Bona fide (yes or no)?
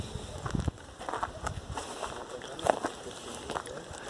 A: yes